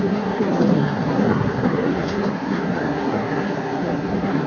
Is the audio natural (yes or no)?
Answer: no